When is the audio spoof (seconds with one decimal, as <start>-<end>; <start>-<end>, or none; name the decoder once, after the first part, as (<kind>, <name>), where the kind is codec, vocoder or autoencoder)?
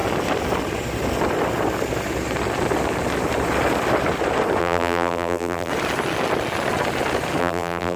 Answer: 4.6-5.7 (vocoder, BigVGAN v2); 7.4-8.0